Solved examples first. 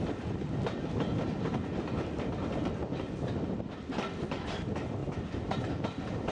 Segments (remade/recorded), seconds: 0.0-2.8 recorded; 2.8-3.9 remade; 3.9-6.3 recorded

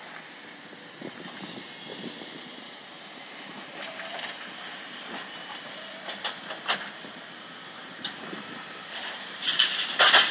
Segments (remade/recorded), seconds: 0.0-1.9 recorded; 1.9-6.0 remade; 6.0-7.8 recorded; 7.8-9.8 remade; 9.8-10.3 recorded

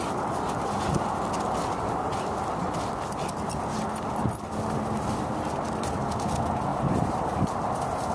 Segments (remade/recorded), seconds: 0.0-6.7 recorded; 6.7-7.4 remade; 7.4-8.1 recorded

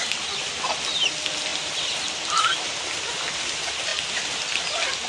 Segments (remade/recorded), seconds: 0.0-5.1 recorded

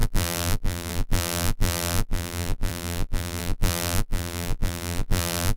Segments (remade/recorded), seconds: 0.0-5.6 remade